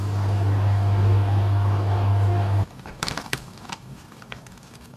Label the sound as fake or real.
fake